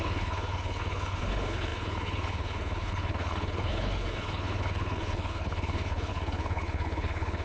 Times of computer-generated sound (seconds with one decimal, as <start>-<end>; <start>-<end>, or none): 0.0-7.4